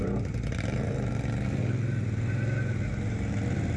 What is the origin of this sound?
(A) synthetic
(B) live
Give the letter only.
B